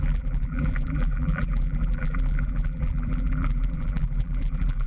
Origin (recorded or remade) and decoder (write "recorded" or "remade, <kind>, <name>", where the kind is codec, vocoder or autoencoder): remade, vocoder, BigVGAN v2